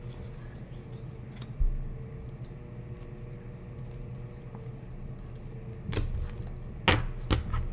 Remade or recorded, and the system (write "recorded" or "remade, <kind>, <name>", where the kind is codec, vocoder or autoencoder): recorded